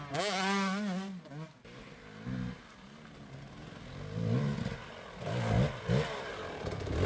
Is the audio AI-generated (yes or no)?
no